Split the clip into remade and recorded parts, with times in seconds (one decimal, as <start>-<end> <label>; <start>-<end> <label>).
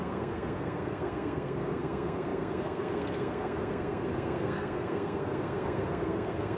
0.0-6.6 remade